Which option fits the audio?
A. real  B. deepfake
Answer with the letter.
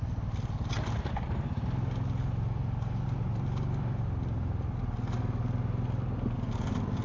A